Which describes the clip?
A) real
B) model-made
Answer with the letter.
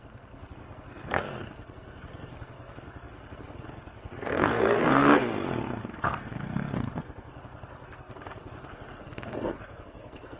B